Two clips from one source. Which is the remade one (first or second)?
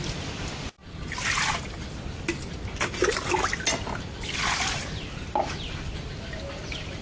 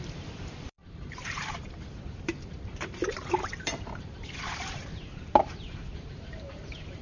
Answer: second